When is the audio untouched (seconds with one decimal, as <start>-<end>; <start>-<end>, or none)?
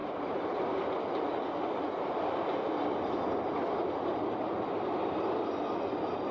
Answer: 0.0-6.3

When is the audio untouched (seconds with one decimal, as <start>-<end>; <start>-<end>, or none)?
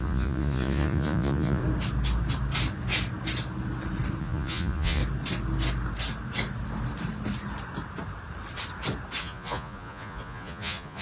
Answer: 1.6-4.2; 5.0-9.2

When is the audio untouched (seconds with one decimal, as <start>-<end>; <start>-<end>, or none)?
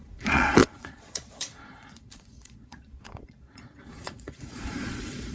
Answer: none